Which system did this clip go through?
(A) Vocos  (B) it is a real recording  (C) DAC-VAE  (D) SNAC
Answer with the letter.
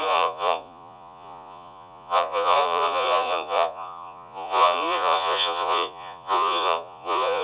A